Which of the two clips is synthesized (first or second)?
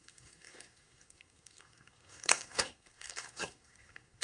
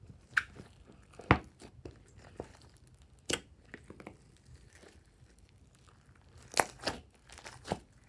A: first